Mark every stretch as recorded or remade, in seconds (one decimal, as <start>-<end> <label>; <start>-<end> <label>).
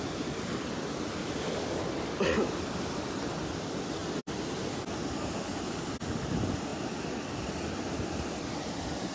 0.0-9.1 recorded